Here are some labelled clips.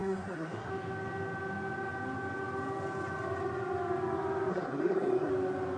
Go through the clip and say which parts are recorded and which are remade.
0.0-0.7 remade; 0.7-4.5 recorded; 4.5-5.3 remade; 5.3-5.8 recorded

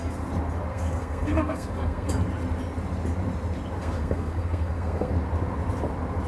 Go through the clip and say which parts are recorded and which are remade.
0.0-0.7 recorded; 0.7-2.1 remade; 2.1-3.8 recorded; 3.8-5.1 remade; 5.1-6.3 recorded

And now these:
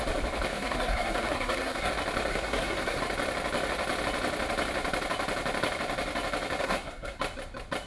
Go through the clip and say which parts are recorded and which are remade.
0.0-0.5 recorded; 0.5-1.9 remade; 1.9-2.3 recorded; 2.3-3.0 remade; 3.0-6.6 recorded; 6.6-7.2 remade; 7.2-7.9 recorded

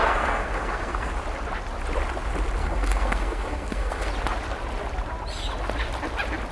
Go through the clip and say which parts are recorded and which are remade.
0.0-1.1 remade; 1.1-2.6 recorded; 2.6-4.1 remade; 4.1-6.5 recorded